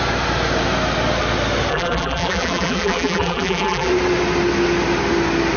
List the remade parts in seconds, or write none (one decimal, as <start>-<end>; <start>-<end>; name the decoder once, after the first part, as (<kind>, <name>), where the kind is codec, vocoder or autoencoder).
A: 1.7-3.9 (vocoder, BigVGAN v2)